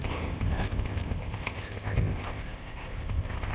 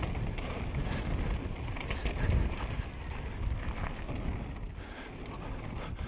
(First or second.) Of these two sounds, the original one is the second